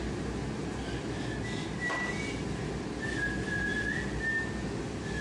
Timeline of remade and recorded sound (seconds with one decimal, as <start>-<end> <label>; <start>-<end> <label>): 0.0-5.2 recorded